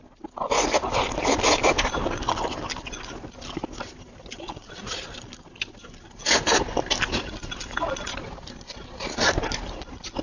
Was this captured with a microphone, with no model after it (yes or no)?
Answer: yes